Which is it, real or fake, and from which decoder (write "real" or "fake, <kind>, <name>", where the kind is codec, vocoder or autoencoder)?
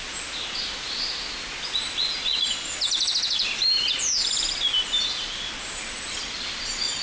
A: real